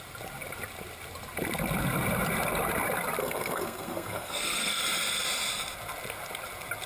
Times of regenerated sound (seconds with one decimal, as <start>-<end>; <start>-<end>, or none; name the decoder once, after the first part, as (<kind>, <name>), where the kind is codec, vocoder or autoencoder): 3.2-4.8 (codec, SNAC)